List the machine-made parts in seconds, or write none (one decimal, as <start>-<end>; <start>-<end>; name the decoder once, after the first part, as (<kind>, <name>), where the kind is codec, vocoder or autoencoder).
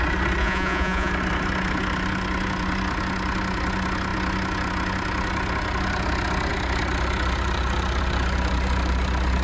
0.4-1.1 (vocoder, Vocos)